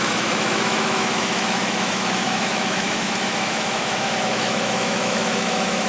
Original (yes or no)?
no